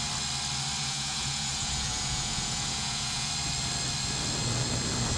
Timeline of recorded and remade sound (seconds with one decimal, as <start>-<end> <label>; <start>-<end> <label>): 0.0-0.8 recorded; 0.8-3.3 remade; 3.3-5.2 recorded